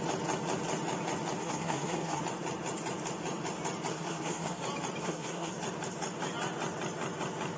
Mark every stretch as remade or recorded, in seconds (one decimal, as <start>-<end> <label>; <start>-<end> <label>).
0.0-1.4 recorded; 1.4-2.2 remade; 2.2-3.9 recorded; 3.9-4.6 remade; 4.6-5.0 recorded; 5.0-5.5 remade; 5.5-7.6 recorded